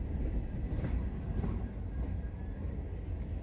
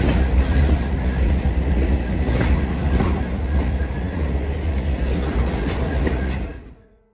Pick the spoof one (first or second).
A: second